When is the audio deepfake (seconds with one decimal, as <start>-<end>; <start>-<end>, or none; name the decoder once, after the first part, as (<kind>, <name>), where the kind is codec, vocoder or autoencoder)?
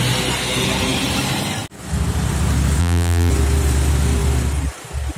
2.8-3.3 (vocoder, BigVGAN v2)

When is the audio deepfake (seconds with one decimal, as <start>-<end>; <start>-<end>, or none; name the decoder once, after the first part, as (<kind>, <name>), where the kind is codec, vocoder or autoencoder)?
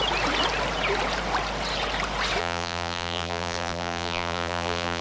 2.4-5.0 (vocoder, BigVGAN v2)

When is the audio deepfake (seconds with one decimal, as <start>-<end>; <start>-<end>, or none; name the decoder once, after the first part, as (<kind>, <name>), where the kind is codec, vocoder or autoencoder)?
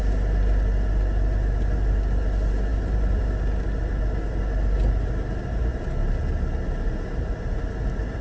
2.7-3.2 (vocoder, BigVGAN v2)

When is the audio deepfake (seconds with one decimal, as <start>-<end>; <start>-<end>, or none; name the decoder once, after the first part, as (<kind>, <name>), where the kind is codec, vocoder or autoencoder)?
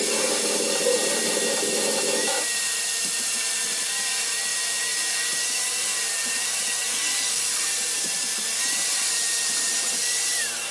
0.0-10.7 (vocoder, BigVGAN v2)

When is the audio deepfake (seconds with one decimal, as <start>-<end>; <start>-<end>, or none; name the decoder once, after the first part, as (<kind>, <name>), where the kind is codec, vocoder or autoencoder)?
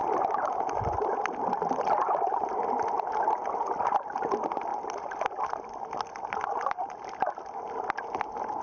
0.0-1.1 (vocoder, BigVGAN v2); 4.7-5.4